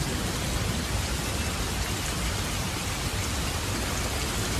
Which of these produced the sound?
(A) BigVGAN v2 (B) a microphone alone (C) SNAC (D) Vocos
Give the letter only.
B